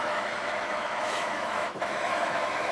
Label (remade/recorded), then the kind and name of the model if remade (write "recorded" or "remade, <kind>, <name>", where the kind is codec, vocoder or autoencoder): remade, autoencoder, DAC-VAE